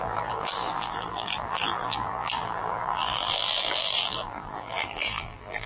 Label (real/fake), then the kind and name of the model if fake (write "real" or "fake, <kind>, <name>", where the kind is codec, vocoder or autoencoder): fake, vocoder, BigVGAN v2